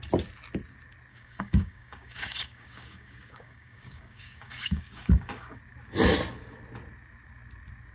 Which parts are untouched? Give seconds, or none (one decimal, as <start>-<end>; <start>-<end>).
0.0-1.1; 5.6-7.9